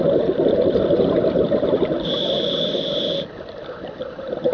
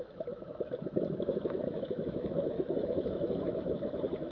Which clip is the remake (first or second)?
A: second